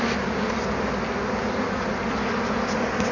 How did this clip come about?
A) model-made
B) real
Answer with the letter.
B